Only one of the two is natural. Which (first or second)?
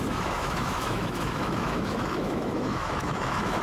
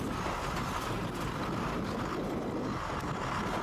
second